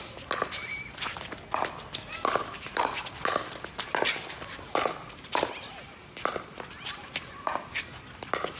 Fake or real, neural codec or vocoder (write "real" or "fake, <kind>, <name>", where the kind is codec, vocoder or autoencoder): fake, vocoder, BigVGAN v2